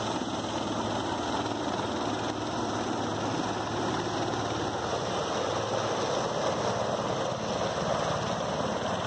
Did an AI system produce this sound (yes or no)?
no